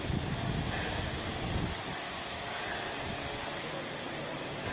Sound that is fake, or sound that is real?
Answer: real